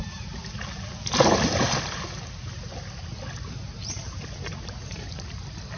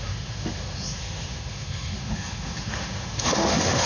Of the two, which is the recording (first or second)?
first